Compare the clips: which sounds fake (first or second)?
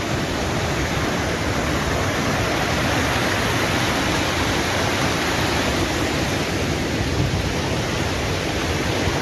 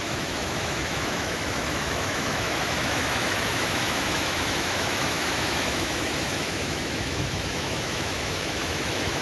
second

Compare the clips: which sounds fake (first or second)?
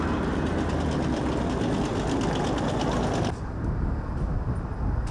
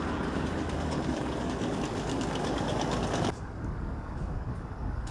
second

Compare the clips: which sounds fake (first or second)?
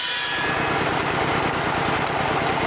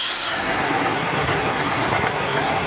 second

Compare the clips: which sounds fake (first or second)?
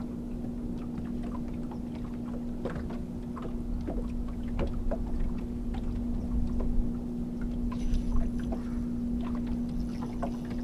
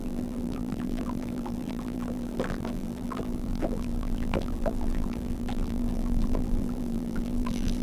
second